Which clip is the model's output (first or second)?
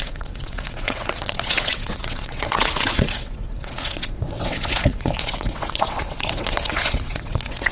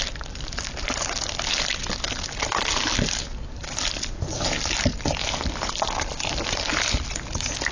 first